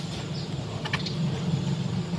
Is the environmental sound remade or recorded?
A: recorded